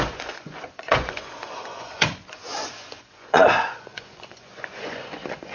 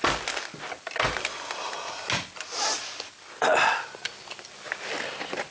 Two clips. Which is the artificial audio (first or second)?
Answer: first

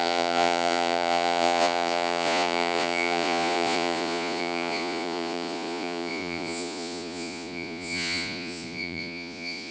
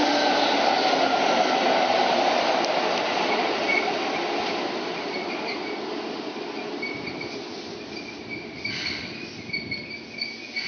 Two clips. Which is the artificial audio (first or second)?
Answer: first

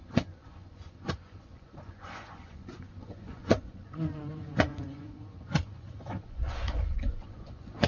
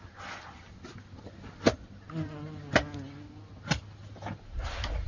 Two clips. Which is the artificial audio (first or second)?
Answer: first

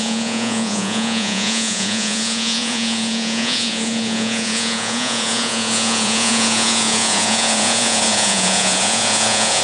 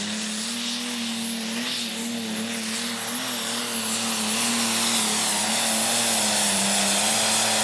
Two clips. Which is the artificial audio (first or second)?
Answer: first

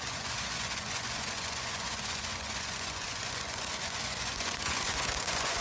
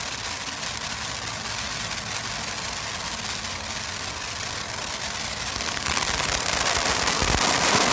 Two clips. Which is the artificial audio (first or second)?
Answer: first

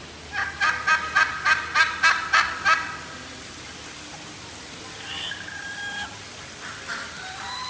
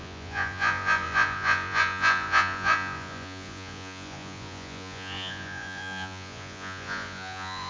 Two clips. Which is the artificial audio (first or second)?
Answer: second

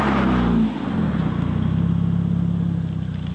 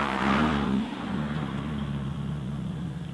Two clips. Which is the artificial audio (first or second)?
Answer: second